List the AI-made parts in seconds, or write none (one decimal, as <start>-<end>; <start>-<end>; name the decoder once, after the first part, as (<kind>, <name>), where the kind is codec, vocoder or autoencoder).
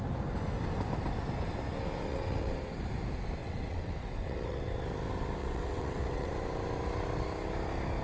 2.1-2.6 (vocoder, WaveNeXt); 3.4-4.6; 5.4-6.3